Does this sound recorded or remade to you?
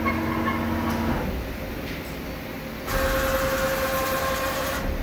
recorded